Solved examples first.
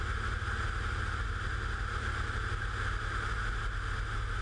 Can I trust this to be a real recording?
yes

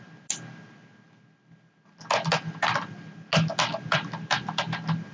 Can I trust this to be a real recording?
yes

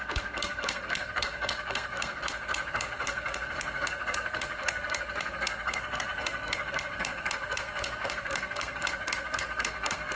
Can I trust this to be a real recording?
no